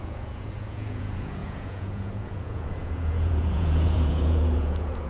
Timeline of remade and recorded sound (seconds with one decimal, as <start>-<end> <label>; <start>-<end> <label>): 0.0-5.1 remade